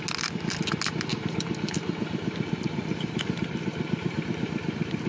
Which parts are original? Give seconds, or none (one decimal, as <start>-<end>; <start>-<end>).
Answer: 0.0-1.1; 4.2-5.1